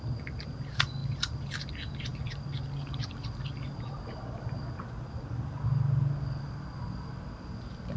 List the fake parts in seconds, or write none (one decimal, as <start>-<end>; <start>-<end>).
none